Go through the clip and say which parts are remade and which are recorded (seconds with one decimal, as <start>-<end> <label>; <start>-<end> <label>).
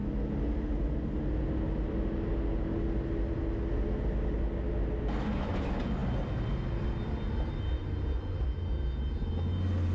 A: 0.0-9.9 recorded